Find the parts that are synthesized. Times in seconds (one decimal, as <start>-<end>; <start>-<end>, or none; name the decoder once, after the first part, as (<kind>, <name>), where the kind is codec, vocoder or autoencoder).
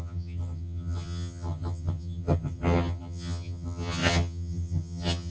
0.0-5.3 (vocoder, HiFi-GAN)